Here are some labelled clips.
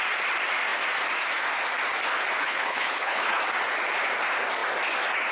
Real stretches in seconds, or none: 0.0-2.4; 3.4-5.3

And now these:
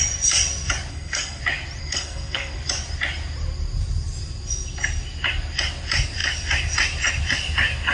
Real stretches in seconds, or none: 0.0-0.9; 1.4-1.8; 2.6-7.9

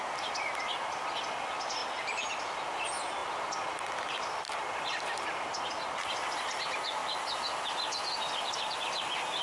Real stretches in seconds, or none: 0.0-9.4

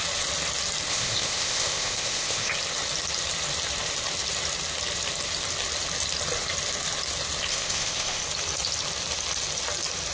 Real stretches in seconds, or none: 0.0-0.9; 2.5-7.5; 8.2-10.1

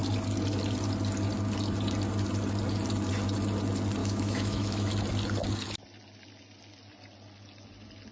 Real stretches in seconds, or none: 0.0-4.0; 4.9-8.1